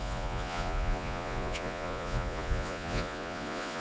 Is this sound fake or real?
fake